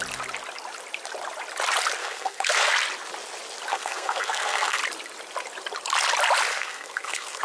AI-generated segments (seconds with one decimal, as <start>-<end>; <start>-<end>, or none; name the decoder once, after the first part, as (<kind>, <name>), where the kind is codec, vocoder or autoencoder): 2.0-2.7 (codec, SNAC); 3.7-4.8; 6.5-7.4